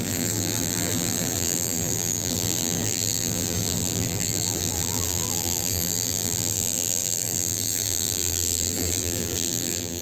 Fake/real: fake